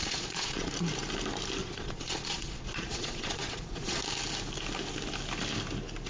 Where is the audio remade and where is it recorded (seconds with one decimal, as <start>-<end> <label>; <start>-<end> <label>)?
0.0-0.7 remade; 0.7-1.6 recorded; 1.6-4.0 remade; 4.0-6.1 recorded